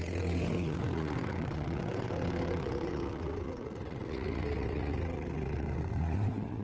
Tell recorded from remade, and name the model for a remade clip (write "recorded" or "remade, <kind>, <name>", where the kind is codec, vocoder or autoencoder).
remade, vocoder, WaveNeXt